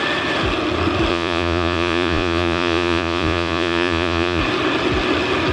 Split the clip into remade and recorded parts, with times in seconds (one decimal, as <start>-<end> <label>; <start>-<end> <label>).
0.0-1.1 recorded; 1.1-4.4 remade; 4.4-5.5 recorded